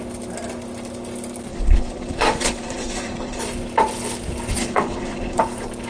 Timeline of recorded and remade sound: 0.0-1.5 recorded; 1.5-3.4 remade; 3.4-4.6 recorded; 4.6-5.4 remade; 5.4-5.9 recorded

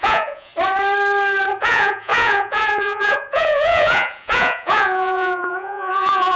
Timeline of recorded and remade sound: 0.0-0.5 remade; 0.5-1.6 recorded; 1.6-6.4 remade

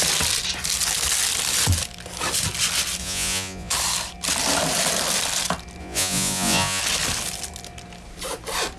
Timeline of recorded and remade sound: 0.0-3.0 recorded; 3.0-3.7 remade; 3.7-5.8 recorded; 5.8-6.8 remade; 6.8-8.8 recorded